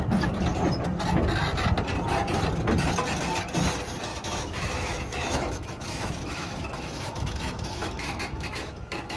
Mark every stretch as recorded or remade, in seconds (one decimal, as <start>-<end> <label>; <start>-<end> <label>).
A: 0.0-4.1 recorded; 4.1-9.2 remade